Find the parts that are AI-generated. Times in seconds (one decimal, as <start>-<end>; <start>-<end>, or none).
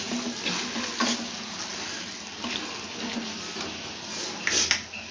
none